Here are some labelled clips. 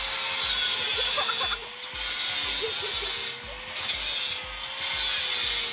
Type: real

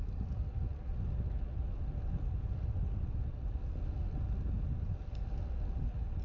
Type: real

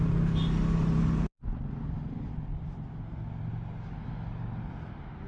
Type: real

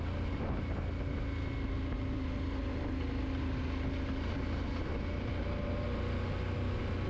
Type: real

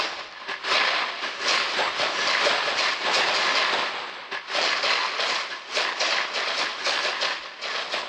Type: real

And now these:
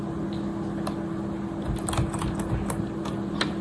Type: real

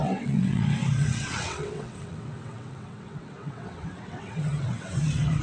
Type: fake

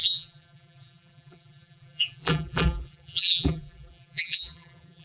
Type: fake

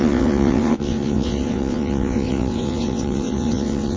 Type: fake